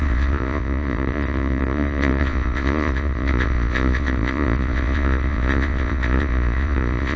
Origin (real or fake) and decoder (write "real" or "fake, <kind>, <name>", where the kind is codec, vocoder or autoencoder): fake, vocoder, Vocos